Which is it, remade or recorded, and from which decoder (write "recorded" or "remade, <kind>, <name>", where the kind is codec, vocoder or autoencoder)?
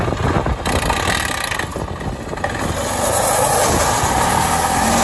recorded